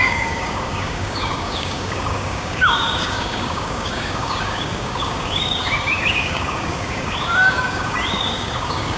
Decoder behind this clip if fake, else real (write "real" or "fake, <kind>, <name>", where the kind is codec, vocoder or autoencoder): fake, codec, DAC